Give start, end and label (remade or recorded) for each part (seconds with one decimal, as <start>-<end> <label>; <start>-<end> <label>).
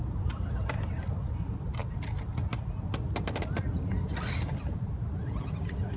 0.0-6.0 recorded